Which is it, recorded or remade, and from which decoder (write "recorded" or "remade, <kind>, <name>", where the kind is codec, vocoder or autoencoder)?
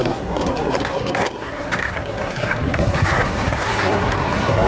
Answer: remade, codec, SNAC